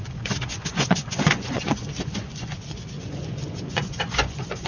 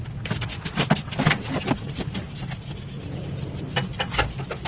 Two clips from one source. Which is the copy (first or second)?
first